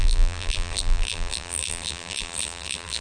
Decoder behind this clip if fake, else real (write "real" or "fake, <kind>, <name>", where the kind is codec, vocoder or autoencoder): fake, vocoder, BigVGAN v2